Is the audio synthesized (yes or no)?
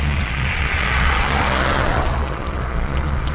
yes